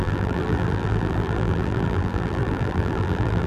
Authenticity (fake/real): fake